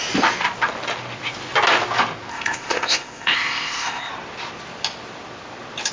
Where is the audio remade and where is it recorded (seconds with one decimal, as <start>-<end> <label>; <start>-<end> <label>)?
0.0-2.3 recorded; 2.3-4.1 remade; 4.1-5.9 recorded